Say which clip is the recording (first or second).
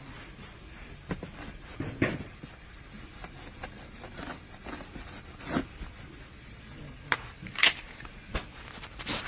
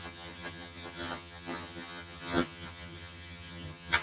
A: first